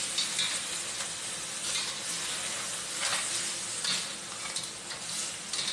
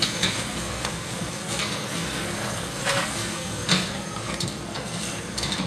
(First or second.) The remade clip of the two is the second